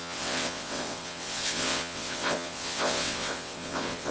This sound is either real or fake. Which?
fake